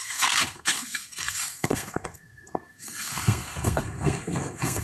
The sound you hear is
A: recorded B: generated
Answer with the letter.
B